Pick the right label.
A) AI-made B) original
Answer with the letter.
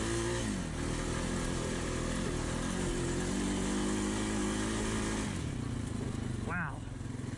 B